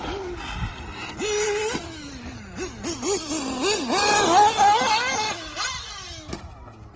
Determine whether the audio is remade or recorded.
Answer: recorded